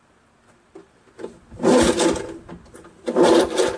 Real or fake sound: real